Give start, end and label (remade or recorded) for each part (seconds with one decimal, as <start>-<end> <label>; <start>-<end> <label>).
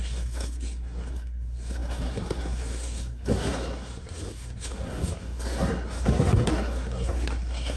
0.0-7.8 remade